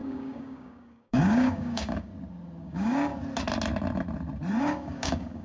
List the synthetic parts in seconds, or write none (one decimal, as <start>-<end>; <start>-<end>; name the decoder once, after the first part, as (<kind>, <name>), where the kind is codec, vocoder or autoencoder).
0.0-2.1 (codec, DAC); 2.6-3.1; 4.6-5.4